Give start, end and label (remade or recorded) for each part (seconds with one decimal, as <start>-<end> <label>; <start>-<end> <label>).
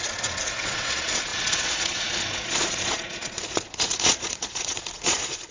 0.0-5.5 remade